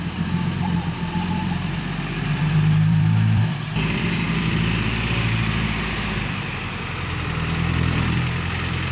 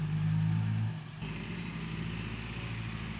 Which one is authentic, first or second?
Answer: second